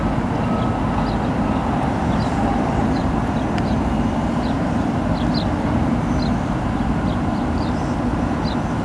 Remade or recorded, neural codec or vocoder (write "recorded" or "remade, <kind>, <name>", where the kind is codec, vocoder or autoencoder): recorded